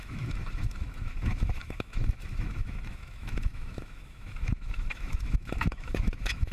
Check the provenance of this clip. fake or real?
fake